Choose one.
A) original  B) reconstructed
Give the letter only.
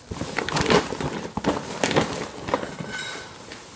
A